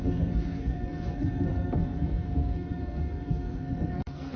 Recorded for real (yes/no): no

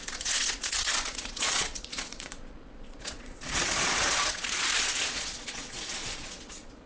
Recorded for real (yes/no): no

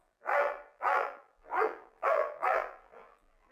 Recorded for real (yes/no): no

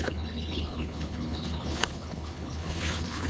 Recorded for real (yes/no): no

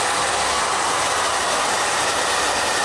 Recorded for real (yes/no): yes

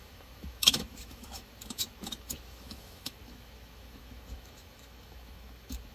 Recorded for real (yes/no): no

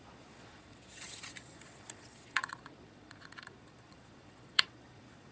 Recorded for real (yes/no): no